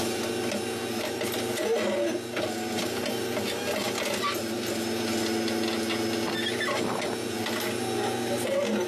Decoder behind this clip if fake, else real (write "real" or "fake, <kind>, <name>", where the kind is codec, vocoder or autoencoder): real